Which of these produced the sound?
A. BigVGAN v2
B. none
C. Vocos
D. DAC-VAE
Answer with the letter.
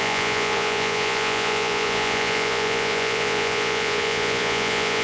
C